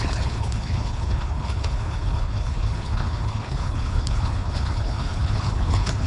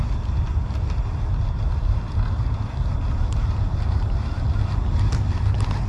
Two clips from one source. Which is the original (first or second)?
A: second